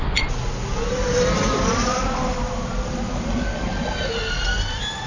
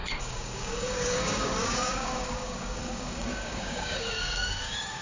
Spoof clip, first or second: second